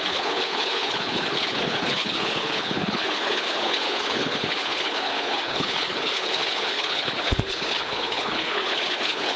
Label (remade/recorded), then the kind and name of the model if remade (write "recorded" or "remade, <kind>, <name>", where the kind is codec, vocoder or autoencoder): remade, codec, HILCodec